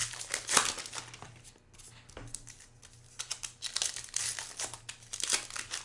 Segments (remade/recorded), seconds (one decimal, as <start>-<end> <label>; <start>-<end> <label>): 0.0-5.8 recorded